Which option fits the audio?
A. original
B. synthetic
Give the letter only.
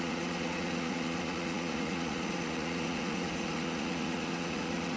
B